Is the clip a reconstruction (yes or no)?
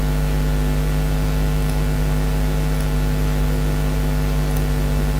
no